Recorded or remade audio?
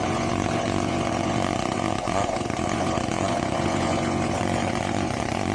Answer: remade